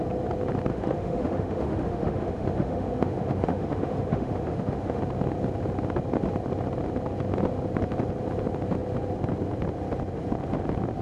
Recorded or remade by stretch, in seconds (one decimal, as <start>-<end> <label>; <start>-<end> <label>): 0.0-0.7 recorded; 0.7-5.0 remade; 5.0-11.0 recorded